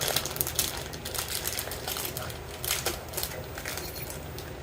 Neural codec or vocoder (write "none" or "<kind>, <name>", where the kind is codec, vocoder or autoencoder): none